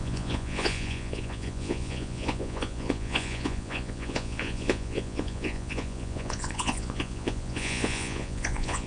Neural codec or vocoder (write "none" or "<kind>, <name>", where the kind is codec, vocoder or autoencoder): vocoder, Vocos